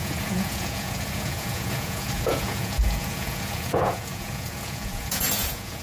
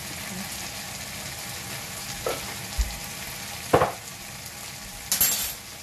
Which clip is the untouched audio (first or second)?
second